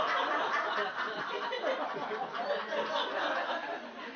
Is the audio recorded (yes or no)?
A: yes